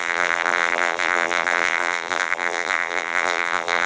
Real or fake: fake